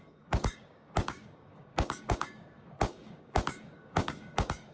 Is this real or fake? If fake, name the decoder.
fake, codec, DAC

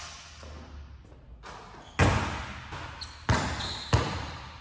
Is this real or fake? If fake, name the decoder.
real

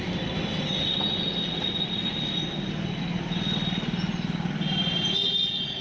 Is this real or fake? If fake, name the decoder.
real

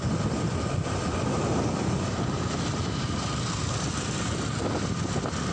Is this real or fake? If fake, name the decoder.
real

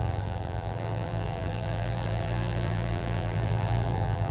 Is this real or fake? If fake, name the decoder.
fake, vocoder, BigVGAN v2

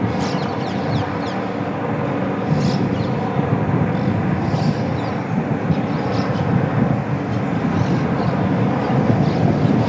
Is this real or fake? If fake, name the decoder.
real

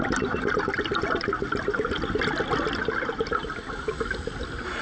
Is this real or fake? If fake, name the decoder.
real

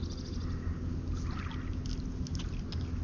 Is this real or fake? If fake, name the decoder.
real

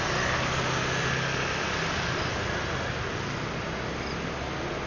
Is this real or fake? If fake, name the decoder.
real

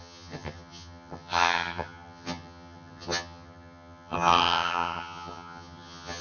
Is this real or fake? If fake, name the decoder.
fake, vocoder, HiFi-GAN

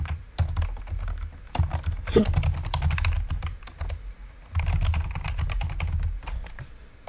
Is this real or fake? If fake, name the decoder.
real